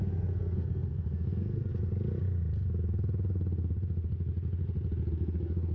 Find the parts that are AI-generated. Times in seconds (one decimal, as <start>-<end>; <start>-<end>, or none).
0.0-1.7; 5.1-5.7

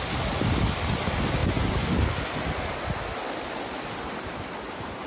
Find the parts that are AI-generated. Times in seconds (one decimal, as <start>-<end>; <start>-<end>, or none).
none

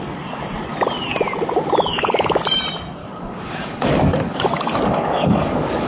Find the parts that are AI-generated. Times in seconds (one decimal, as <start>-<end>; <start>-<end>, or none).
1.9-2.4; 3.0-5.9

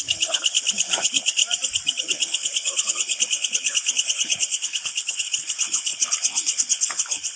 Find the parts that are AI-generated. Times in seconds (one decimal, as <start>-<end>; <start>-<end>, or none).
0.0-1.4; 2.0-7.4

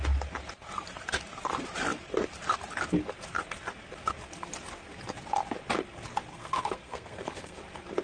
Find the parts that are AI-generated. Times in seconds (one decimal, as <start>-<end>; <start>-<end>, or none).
6.3-7.6

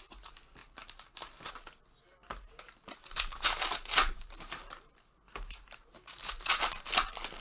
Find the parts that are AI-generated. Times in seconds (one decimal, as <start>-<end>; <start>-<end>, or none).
0.6-1.5; 2.2-6.6

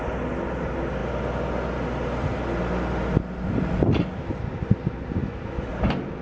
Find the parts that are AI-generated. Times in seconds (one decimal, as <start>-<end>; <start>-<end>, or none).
5.2-5.7